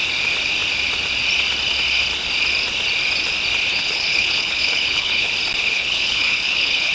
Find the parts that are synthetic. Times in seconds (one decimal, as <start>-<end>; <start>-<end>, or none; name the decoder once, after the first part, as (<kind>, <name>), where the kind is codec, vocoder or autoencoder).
3.7-5.3 (codec, HILCodec); 5.7-6.9